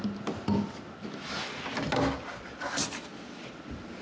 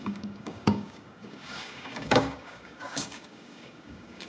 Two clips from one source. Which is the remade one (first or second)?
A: second